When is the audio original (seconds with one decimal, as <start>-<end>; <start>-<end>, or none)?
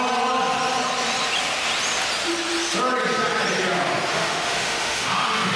0.0-4.1